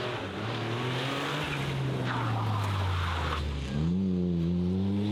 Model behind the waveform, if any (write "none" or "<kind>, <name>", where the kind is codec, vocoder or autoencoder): none